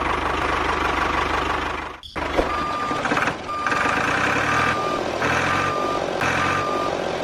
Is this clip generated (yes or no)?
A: no